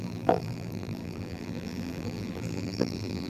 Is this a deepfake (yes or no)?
yes